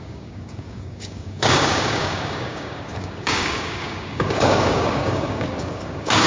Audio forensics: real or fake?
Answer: fake